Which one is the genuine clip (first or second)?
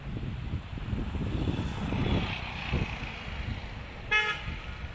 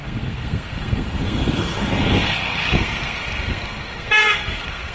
first